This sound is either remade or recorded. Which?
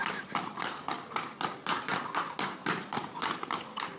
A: recorded